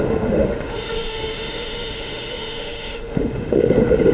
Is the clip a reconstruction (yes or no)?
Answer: yes